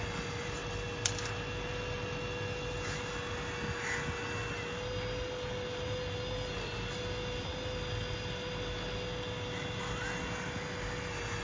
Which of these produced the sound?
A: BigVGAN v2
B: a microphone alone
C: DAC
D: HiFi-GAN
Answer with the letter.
B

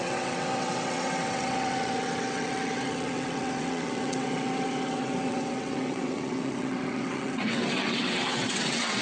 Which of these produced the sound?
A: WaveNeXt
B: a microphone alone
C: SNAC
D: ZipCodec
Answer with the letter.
A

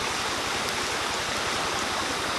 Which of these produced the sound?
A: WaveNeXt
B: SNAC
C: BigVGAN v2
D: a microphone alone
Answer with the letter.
D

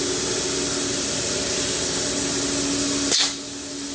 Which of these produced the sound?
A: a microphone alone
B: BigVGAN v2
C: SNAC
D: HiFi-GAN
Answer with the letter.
A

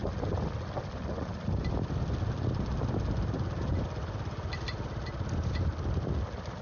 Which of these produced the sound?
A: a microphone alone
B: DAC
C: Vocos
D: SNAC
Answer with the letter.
A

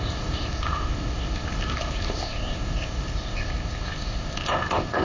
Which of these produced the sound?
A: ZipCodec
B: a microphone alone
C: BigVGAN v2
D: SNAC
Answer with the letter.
A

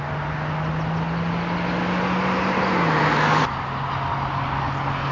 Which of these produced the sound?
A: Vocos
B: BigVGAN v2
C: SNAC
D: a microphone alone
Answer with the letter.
D